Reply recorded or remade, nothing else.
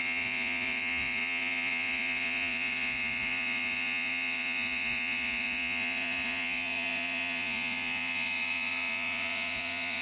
remade